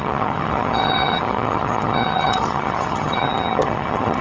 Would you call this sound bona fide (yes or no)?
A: no